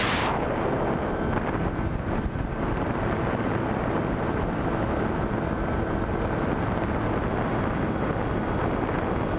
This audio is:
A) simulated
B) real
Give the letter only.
B